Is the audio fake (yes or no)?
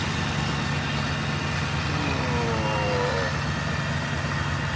no